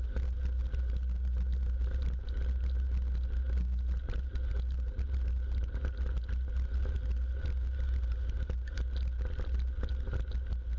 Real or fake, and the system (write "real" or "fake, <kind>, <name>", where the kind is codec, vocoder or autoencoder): real